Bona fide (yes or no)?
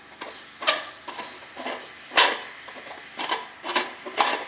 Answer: yes